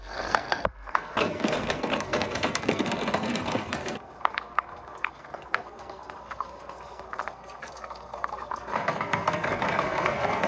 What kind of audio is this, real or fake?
fake